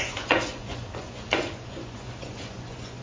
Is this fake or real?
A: fake